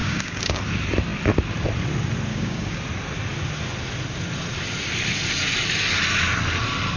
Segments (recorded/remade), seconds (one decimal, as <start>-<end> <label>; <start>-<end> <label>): 0.0-0.6 remade; 0.6-2.3 recorded; 2.3-2.8 remade; 2.8-7.0 recorded